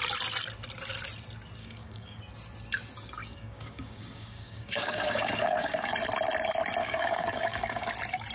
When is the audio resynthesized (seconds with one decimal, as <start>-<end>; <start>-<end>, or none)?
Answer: 1.6-2.2; 3.2-5.9; 6.8-7.9